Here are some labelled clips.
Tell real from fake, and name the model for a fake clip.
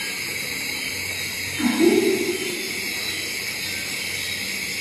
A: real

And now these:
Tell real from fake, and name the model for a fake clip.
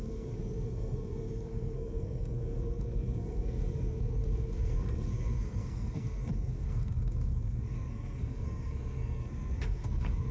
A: fake, codec, SNAC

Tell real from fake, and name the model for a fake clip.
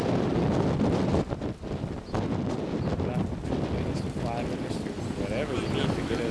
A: real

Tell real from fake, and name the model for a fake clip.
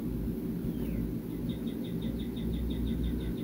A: real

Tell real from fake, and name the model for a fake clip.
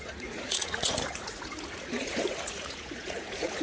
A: fake, vocoder, Vocos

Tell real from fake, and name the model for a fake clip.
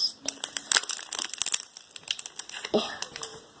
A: real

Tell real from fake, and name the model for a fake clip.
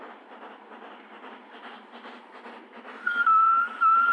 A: real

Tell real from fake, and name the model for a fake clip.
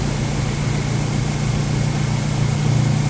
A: real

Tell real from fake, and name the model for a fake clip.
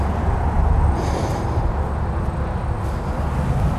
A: real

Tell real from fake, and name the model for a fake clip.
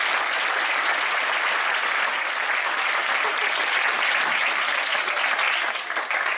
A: real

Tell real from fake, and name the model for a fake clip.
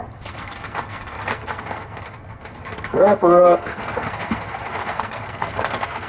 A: fake, codec, SNAC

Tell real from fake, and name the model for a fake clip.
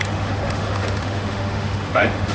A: fake, autoencoder, DAC-VAE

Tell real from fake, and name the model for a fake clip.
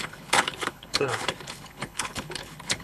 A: fake, codec, HILCodec